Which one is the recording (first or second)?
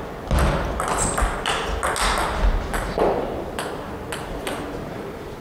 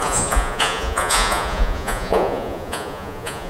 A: first